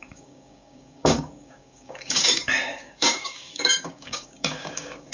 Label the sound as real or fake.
fake